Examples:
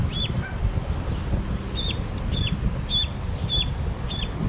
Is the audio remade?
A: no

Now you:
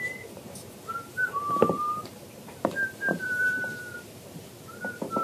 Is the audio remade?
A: yes